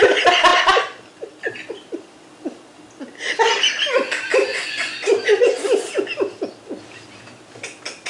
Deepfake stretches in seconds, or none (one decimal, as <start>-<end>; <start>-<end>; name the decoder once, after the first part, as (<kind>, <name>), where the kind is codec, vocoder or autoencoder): 4.5-5.1 (vocoder, Vocos)

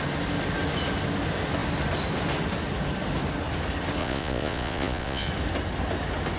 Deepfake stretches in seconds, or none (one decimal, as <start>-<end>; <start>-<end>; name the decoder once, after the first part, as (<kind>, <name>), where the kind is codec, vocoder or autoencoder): 4.0-5.3 (vocoder, Vocos)